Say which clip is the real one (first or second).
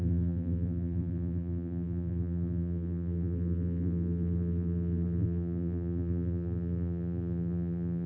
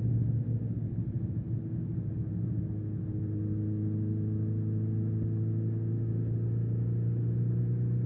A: second